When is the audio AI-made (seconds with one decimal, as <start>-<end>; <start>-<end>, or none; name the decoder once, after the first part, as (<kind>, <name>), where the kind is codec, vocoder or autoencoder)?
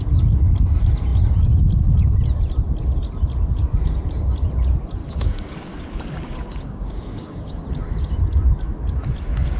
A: 5.0-7.6 (codec, DAC)